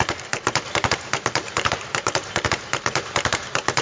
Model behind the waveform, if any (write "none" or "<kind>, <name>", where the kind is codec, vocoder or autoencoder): vocoder, BigVGAN v2